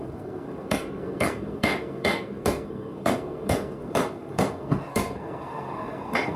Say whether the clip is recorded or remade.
remade